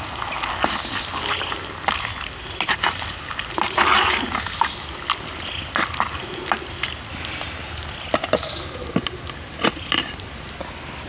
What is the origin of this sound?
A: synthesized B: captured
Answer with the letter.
B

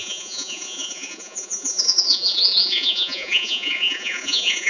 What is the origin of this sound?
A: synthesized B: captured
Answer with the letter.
A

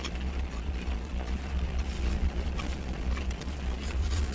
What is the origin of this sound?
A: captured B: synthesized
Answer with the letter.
B